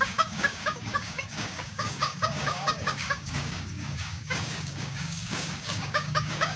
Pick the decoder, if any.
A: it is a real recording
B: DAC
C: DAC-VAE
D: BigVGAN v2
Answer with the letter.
B